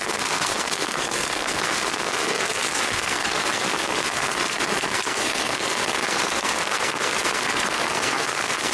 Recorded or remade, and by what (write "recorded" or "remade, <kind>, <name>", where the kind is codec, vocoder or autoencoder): remade, codec, SNAC